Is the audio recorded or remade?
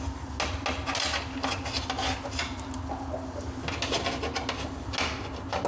recorded